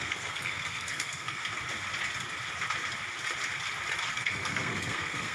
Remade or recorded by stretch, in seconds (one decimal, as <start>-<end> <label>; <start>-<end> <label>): 0.0-1.4 remade; 1.4-4.1 recorded; 4.1-5.3 remade